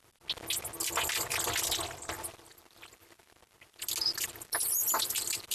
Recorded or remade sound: recorded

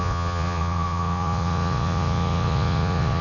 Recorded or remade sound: remade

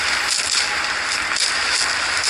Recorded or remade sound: recorded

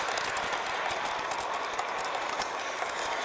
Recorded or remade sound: recorded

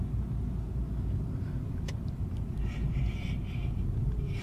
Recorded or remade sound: recorded